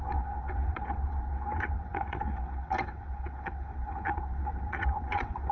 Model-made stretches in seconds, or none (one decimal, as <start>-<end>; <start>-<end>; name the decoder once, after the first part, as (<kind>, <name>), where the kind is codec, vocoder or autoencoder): 0.0-5.5 (vocoder, WaveNeXt)

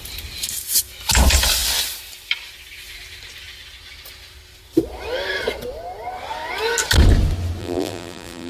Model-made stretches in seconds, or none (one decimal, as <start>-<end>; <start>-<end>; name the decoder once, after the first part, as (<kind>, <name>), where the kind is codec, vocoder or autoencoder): 7.6-8.5 (vocoder, BigVGAN v2)

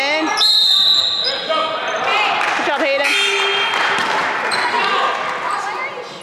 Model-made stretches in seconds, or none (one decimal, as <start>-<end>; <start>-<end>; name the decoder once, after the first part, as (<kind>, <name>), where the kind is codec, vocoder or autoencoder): none

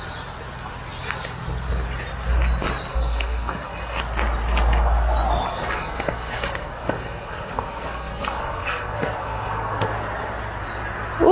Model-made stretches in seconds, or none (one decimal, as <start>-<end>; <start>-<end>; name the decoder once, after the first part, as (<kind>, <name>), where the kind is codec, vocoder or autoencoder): 2.9-4.0 (codec, SNAC); 5.5-9.9

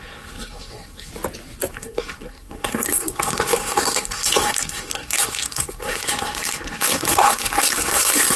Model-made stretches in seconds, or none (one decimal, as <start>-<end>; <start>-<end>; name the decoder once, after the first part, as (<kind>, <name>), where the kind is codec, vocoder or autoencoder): 0.0-1.1 (codec, SNAC); 1.7-8.4